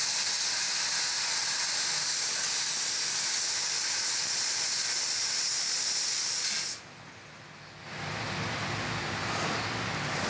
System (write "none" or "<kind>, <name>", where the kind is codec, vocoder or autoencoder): none